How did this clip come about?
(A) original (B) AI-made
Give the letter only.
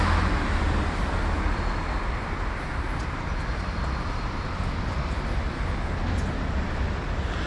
A